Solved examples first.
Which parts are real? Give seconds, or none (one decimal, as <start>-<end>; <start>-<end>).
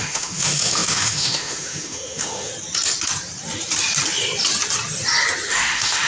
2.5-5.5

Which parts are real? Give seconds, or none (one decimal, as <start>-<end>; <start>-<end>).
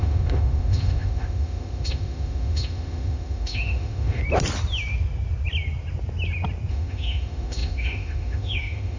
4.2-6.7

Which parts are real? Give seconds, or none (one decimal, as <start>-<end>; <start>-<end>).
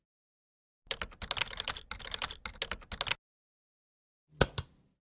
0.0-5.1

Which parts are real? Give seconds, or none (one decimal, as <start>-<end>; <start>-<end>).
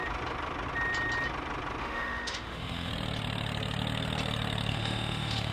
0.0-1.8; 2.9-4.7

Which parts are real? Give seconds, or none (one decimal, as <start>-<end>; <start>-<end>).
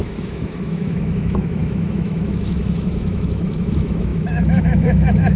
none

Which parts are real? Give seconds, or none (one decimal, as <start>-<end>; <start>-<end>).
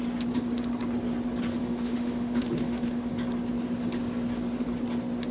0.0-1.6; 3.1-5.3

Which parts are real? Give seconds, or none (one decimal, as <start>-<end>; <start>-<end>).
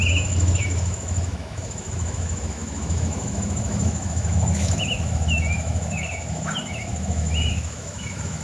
none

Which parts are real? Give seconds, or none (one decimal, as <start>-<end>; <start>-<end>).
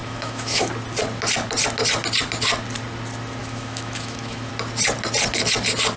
0.7-3.4; 4.5-6.0